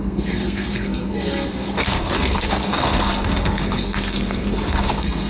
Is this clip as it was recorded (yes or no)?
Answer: no